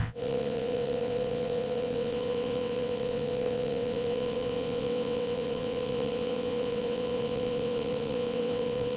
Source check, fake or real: fake